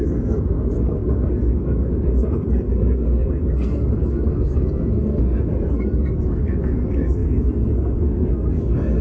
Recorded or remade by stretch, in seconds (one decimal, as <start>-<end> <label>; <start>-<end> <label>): 0.0-9.0 remade